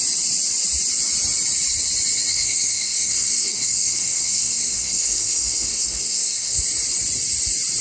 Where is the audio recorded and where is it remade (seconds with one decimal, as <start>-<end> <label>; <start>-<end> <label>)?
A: 0.0-2.3 recorded; 2.3-6.6 remade; 6.6-7.8 recorded